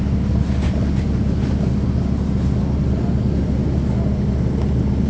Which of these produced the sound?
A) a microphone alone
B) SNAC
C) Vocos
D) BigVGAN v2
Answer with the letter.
A